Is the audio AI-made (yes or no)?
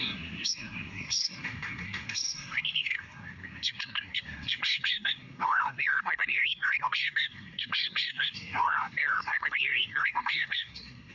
yes